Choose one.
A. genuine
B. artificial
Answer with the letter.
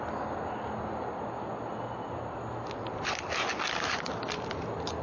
A